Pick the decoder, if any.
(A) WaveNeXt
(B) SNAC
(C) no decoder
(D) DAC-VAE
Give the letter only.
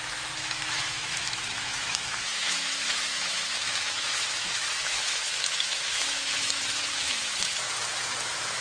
D